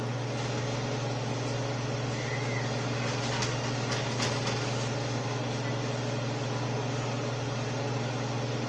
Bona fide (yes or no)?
yes